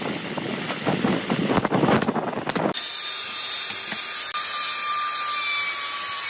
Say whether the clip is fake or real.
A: real